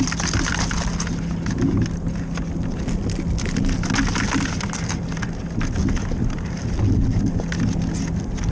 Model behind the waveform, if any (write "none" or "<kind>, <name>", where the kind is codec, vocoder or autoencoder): none